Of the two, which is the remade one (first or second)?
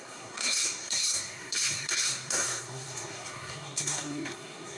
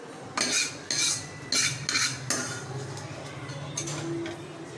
first